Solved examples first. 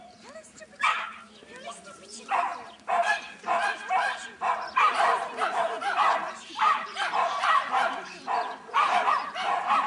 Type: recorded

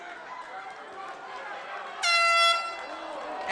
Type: recorded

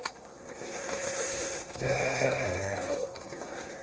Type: remade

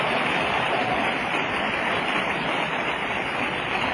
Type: recorded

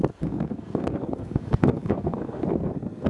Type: remade